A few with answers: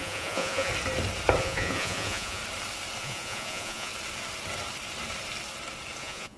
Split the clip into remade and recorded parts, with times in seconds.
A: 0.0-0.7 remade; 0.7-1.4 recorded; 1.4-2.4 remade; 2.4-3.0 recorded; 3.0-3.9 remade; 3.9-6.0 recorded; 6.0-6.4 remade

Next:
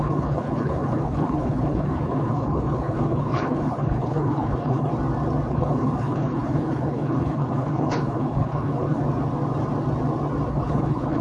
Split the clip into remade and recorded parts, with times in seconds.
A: 0.0-4.9 remade; 4.9-5.5 recorded; 5.5-9.0 remade; 9.0-10.5 recorded; 10.5-11.2 remade

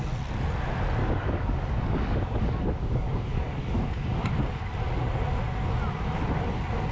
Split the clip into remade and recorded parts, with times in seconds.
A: 0.0-1.0 recorded; 1.0-4.3 remade; 4.3-6.9 recorded

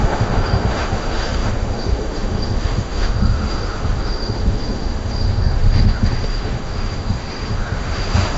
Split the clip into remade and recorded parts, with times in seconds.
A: 0.0-8.4 remade

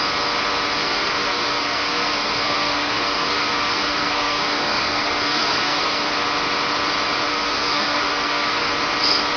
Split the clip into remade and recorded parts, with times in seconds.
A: 0.0-0.8 recorded; 0.8-6.1 remade; 6.1-7.3 recorded; 7.3-8.7 remade; 8.7-9.4 recorded

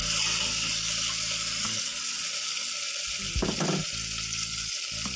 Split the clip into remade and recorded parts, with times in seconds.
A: 0.0-5.2 recorded

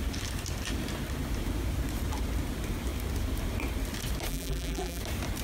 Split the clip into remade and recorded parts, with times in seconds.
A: 0.0-4.3 recorded; 4.3-5.0 remade; 5.0-5.4 recorded

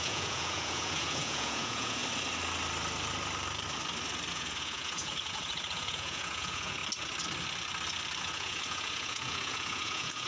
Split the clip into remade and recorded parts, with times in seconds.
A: 0.0-2.0 remade; 2.0-4.3 recorded; 4.3-6.8 remade; 6.8-8.2 recorded; 8.2-10.3 remade